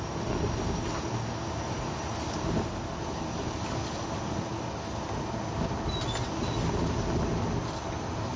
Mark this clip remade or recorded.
recorded